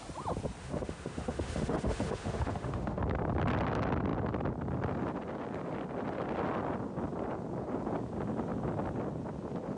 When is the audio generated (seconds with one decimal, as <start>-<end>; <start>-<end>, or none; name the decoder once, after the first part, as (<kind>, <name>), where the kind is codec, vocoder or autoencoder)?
0.6-3.0 (autoencoder, DAC-VAE)